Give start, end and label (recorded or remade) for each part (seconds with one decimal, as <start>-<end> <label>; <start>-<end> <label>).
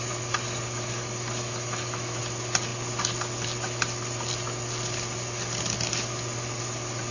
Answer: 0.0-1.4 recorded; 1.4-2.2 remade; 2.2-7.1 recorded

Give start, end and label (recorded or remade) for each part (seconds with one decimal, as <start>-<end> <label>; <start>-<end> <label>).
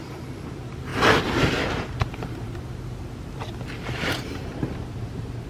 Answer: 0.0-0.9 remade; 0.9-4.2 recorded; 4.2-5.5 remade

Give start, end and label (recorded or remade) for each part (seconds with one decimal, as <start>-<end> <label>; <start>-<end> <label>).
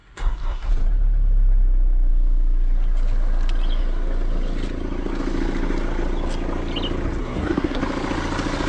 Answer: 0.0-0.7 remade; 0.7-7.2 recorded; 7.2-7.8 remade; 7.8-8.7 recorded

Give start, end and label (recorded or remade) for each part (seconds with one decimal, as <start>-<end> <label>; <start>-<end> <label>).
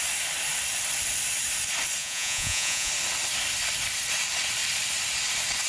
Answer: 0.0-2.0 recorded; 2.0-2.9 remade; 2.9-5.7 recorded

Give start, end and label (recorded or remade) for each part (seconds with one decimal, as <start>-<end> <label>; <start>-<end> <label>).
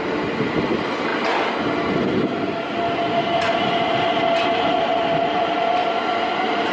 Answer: 0.0-6.7 recorded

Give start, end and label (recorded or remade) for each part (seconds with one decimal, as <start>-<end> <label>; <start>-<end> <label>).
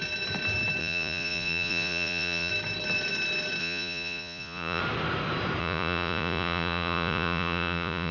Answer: 0.0-0.8 recorded; 0.8-2.5 remade; 2.5-3.6 recorded; 3.6-4.8 remade; 4.8-5.6 recorded; 5.6-8.1 remade